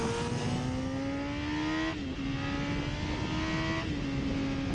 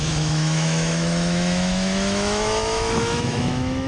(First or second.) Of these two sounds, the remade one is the second